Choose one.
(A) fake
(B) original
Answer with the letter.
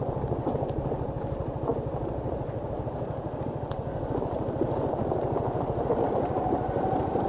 B